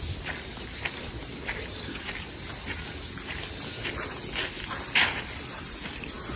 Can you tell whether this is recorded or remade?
recorded